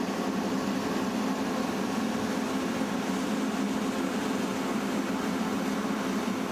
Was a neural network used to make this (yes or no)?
no